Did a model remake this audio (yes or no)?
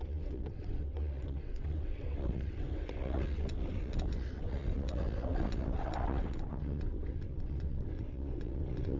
yes